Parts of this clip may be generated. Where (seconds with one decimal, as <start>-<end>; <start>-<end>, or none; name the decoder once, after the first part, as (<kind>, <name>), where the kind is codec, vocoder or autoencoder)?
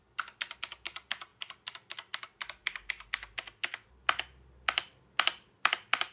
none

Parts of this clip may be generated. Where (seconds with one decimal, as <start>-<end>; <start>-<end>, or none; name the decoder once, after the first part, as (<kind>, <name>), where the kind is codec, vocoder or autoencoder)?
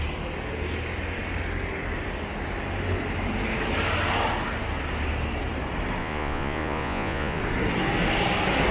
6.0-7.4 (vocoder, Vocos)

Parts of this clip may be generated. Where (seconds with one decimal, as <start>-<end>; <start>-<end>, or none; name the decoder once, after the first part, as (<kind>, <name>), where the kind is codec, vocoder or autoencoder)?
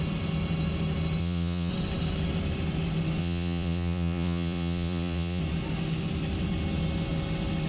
1.2-1.7 (vocoder, Vocos); 3.2-5.4